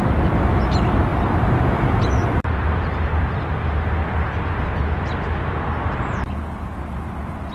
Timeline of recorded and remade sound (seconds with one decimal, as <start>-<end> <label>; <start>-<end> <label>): 0.0-1.1 recorded; 1.1-4.7 remade; 4.7-7.5 recorded